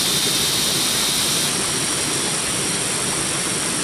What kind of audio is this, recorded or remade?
recorded